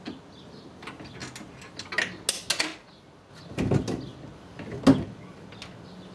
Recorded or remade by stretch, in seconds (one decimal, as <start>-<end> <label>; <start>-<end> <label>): 0.0-6.1 recorded